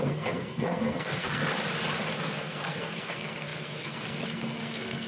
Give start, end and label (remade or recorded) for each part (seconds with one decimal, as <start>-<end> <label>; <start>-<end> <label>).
0.0-1.4 remade; 1.4-2.2 recorded; 2.2-5.1 remade

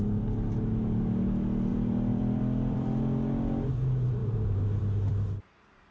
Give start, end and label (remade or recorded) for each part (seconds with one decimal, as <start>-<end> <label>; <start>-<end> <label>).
0.0-1.7 recorded; 1.7-3.0 remade; 3.0-4.2 recorded; 4.2-4.8 remade; 4.8-5.9 recorded

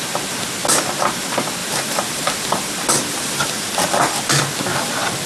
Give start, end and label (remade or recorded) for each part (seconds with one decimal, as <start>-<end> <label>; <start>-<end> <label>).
0.0-1.6 recorded; 1.6-4.4 remade; 4.4-5.3 recorded

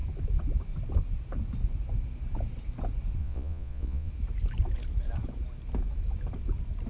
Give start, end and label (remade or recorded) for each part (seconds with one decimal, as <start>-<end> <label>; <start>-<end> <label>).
0.0-3.2 recorded; 3.2-4.1 remade; 4.1-6.9 recorded

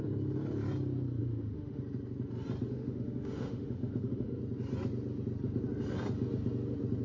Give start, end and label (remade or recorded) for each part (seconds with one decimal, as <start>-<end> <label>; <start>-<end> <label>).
0.0-1.2 recorded; 1.2-1.8 remade; 1.8-2.7 recorded; 2.7-4.4 remade; 4.4-7.0 recorded

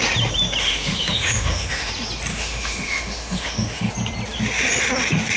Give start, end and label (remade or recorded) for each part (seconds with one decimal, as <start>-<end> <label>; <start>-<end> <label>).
0.0-0.6 recorded; 0.6-1.9 remade; 1.9-2.3 recorded; 2.3-3.9 remade; 3.9-5.4 recorded

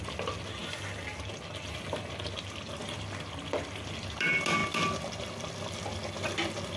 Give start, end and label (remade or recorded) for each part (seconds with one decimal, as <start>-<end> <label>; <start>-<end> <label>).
0.0-6.8 recorded